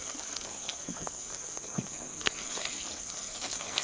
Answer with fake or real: fake